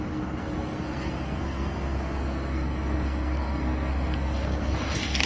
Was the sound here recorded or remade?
remade